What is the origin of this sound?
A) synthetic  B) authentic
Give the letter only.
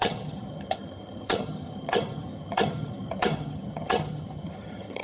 A